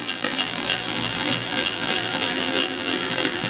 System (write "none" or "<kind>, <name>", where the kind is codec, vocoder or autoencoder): vocoder, BigVGAN v2